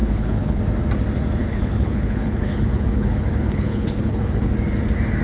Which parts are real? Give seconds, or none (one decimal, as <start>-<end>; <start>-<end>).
0.6-1.4; 4.5-5.2